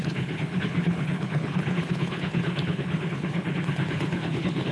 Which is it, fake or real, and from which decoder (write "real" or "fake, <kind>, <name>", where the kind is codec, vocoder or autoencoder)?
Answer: fake, codec, HILCodec